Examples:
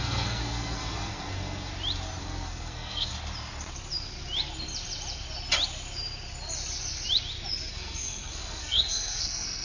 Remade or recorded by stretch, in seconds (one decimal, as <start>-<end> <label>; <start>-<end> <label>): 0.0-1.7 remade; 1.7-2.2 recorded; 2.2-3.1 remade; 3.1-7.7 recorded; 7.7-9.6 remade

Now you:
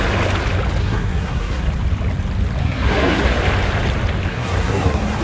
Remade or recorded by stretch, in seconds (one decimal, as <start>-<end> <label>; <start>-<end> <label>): 0.0-0.8 recorded; 0.8-1.7 remade; 1.7-2.6 recorded; 2.6-3.4 remade; 3.4-4.3 recorded; 4.3-5.2 remade

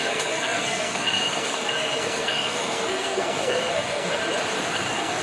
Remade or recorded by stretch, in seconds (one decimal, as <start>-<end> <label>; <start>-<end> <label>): 0.0-4.2 remade; 4.2-4.7 recorded; 4.7-5.2 remade

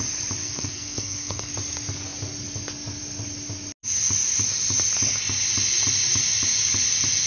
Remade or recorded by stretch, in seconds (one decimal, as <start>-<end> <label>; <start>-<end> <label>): 0.0-0.4 recorded; 0.4-1.5 remade; 1.5-7.3 recorded

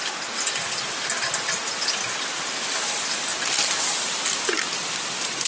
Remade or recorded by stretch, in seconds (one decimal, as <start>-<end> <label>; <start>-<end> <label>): 0.0-5.5 recorded

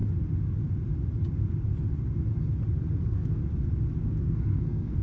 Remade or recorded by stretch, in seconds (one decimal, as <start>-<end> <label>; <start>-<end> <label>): 0.0-3.0 recorded; 3.0-3.4 remade; 3.4-4.0 recorded; 4.0-5.0 remade

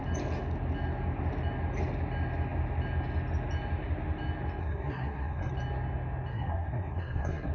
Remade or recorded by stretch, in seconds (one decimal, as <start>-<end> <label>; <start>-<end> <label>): 0.0-4.6 recorded; 4.6-5.5 remade; 5.5-6.3 recorded; 6.3-7.5 remade

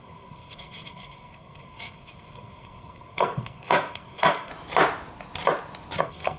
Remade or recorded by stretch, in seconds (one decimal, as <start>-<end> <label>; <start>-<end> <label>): 0.0-4.5 remade; 4.5-6.0 recorded; 6.0-6.4 remade